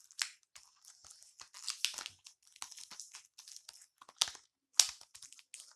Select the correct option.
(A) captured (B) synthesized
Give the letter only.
A